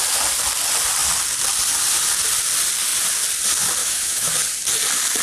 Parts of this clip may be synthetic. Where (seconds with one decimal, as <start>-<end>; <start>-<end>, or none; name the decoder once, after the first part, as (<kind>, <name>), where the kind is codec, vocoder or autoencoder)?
3.8-4.3 (autoencoder, DAC-VAE)